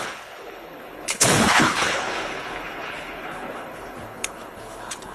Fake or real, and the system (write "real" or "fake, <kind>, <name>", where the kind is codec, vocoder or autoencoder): fake, codec, HILCodec